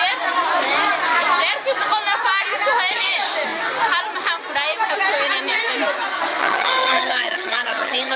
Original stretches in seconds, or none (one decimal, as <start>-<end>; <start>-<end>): 0.0-6.4